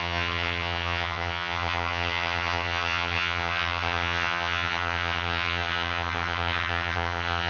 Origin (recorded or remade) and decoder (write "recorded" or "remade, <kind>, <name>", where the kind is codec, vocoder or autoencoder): remade, vocoder, HiFi-GAN